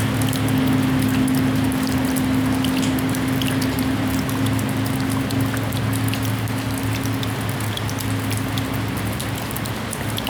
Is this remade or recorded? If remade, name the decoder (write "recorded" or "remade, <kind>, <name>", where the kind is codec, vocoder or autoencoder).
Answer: recorded